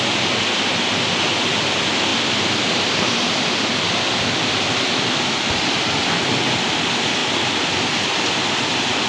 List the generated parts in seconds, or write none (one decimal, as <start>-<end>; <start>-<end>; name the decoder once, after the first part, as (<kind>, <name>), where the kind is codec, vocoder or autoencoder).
none

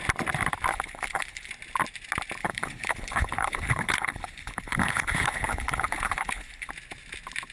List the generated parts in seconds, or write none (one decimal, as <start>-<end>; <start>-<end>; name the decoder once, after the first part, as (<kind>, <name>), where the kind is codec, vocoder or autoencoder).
0.7-1.5 (codec, HILCodec); 2.4-6.7

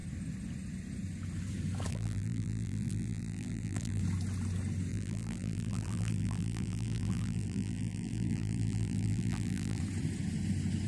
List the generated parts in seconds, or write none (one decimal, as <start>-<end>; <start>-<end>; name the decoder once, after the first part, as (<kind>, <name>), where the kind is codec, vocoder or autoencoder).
1.9-4.0 (vocoder, BigVGAN v2); 4.9-9.8

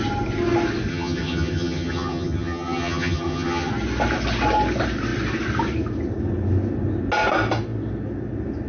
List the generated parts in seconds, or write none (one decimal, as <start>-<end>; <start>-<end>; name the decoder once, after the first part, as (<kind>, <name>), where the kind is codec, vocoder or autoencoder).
0.9-3.7 (vocoder, HiFi-GAN)

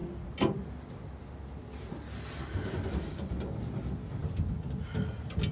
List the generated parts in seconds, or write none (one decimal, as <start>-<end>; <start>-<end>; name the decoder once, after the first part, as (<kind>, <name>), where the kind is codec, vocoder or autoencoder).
none

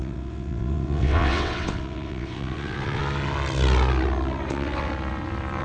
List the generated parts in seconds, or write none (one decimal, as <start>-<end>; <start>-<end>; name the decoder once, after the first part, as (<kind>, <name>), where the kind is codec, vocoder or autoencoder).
0.0-3.0 (vocoder, WaveNeXt); 4.5-4.9